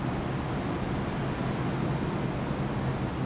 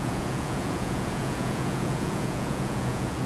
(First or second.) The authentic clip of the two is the first